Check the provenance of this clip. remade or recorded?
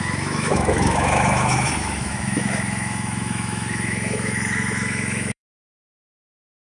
remade